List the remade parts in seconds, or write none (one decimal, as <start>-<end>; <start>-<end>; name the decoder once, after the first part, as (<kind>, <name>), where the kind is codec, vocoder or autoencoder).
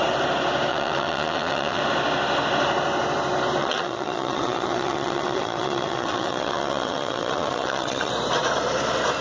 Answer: 0.7-1.8 (vocoder, WaveNeXt); 3.6-8.1